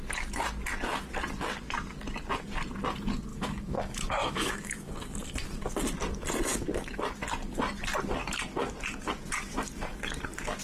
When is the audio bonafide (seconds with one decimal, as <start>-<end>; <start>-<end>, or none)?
0.0-3.3; 4.9-6.5; 7.1-10.6